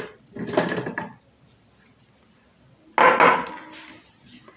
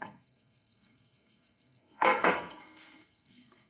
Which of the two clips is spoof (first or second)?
second